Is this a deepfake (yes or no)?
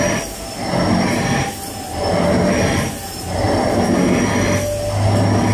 no